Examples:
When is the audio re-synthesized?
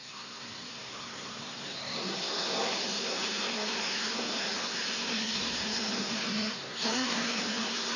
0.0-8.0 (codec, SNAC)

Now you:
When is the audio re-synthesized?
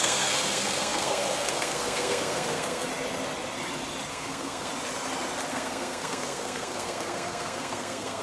0.0-2.9 (codec, SNAC); 4.1-4.7; 5.5-8.2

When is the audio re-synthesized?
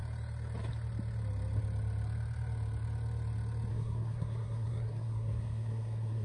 3.7-6.2 (codec, SNAC)